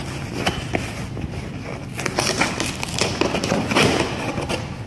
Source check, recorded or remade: recorded